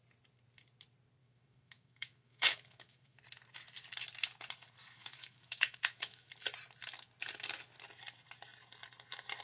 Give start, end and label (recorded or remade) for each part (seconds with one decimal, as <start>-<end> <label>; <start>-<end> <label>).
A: 0.0-1.2 recorded; 1.2-3.2 remade; 3.2-5.0 recorded; 5.0-6.3 remade; 6.3-9.4 recorded